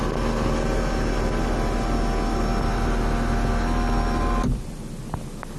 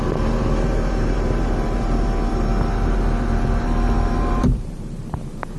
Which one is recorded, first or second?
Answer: first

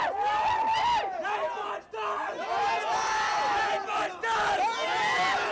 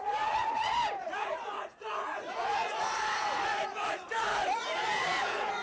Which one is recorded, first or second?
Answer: first